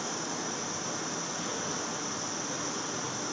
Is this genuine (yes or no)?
yes